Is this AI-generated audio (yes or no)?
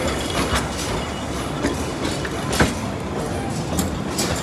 no